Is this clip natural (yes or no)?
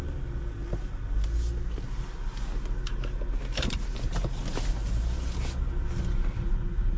yes